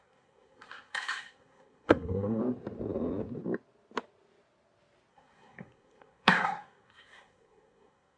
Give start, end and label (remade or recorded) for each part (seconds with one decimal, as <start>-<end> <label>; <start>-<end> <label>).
0.0-2.4 remade; 2.4-5.1 recorded; 5.1-8.2 remade